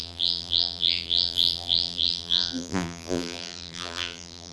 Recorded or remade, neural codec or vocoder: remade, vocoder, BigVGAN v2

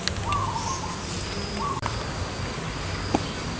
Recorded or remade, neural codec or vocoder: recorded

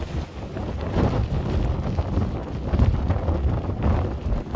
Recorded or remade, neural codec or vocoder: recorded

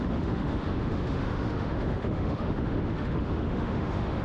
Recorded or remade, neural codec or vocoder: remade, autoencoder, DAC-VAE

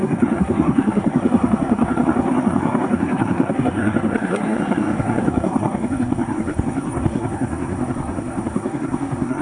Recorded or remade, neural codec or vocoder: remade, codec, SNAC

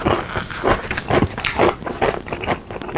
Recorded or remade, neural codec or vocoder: recorded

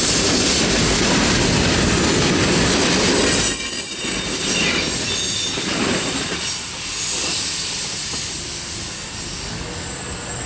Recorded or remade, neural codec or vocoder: recorded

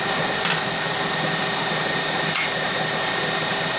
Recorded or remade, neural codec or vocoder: recorded